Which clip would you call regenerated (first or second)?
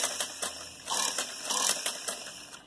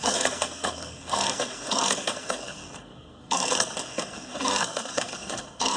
second